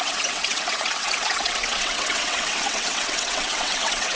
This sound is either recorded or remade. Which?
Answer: remade